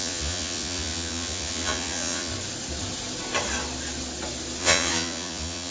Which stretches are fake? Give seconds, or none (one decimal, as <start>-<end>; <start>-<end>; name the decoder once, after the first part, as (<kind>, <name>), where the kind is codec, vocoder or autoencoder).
0.0-2.3 (vocoder, Vocos); 4.6-5.7